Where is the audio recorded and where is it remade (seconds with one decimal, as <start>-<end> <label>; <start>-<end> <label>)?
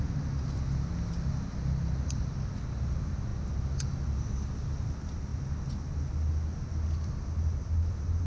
0.0-8.3 recorded